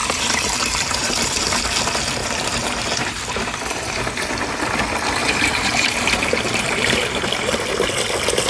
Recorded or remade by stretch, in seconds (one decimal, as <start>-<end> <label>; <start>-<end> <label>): 0.0-1.6 remade; 1.6-2.2 recorded; 2.2-4.0 remade; 4.0-5.2 recorded; 5.2-7.7 remade; 7.7-8.5 recorded